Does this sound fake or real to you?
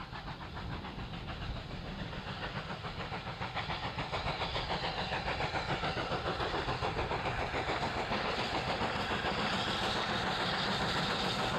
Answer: real